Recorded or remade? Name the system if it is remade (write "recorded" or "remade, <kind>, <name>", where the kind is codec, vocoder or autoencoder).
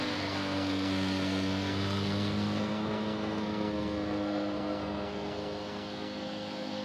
remade, codec, SNAC